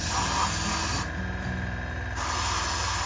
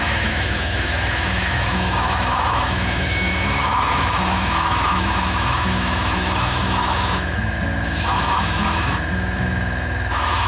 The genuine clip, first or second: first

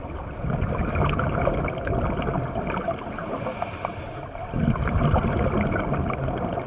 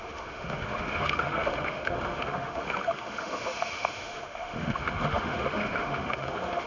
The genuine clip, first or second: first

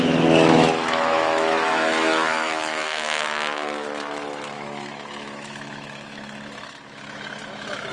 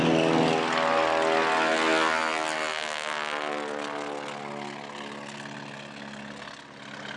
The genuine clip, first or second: second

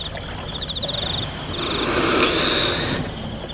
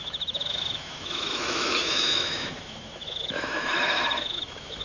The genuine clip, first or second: first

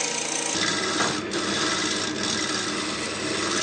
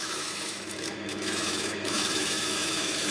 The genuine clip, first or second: first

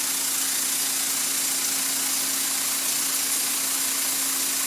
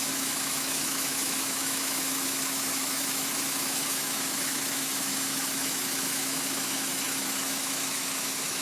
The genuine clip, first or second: first